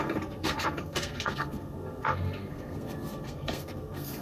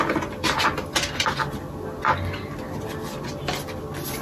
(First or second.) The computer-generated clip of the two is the first